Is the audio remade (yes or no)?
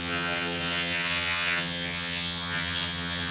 yes